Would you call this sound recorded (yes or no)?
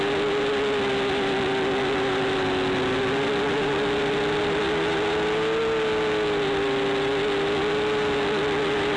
yes